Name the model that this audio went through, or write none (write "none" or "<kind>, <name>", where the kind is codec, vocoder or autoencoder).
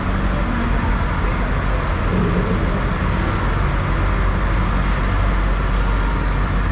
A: none